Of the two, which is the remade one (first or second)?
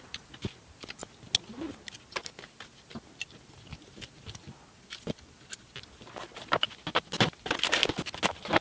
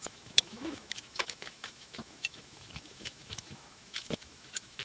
second